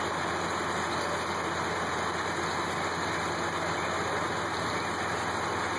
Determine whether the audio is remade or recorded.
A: recorded